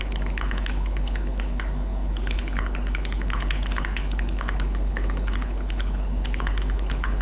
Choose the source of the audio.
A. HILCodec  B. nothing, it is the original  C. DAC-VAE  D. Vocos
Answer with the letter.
A